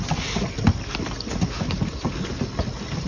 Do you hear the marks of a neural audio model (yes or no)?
no